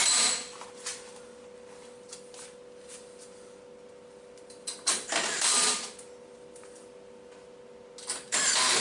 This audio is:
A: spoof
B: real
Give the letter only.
B